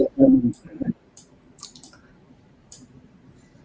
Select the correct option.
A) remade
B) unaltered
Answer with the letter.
A